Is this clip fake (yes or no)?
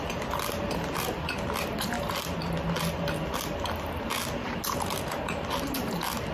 no